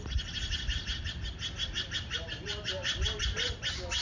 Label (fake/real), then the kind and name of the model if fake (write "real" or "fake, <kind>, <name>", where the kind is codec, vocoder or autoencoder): real